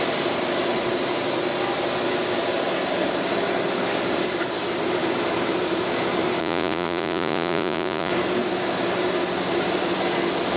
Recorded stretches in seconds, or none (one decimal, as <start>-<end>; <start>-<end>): 0.0-6.4; 8.1-10.6